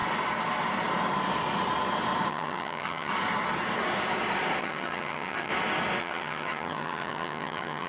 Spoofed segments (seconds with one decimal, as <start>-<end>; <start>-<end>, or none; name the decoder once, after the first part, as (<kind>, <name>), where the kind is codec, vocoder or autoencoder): 2.3-3.1 (vocoder, HiFi-GAN); 4.6-5.5; 6.0-7.9